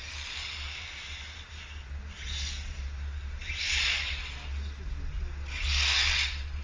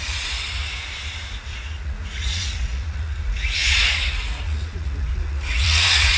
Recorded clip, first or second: first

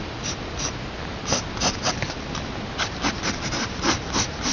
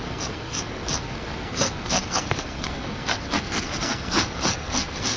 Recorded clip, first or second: first